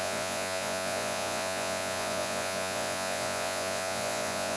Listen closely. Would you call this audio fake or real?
fake